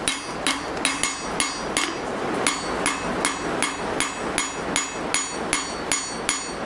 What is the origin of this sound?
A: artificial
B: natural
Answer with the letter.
B